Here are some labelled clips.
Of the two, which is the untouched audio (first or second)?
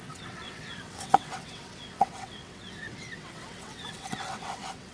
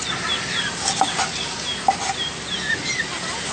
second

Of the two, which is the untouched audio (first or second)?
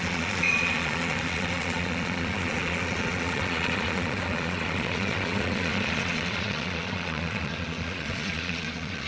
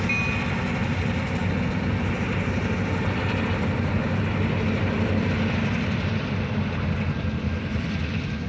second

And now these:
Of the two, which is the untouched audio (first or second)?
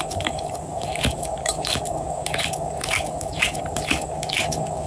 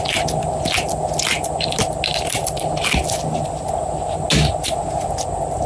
second